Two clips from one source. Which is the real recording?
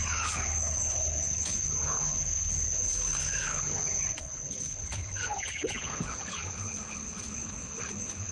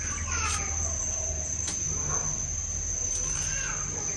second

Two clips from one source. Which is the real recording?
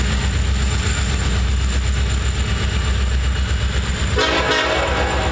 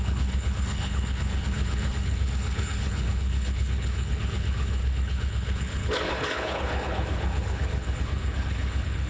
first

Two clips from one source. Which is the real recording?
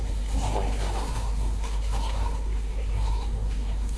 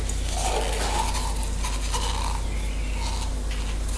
second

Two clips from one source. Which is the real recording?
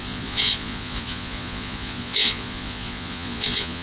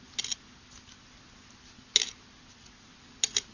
second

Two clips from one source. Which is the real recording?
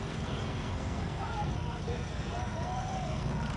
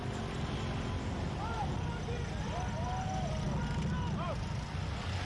second